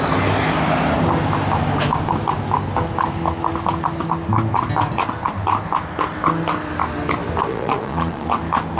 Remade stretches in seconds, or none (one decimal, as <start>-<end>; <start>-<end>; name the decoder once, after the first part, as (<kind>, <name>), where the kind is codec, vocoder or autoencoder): 7.5-8.3 (vocoder, Vocos)